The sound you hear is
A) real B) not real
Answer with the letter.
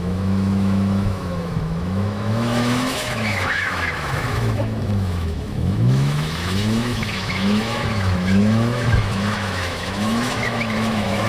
B